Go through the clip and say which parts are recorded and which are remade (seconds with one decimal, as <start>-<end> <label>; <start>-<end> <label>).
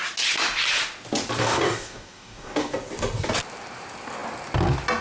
0.0-1.4 recorded; 1.4-2.7 remade; 2.7-5.0 recorded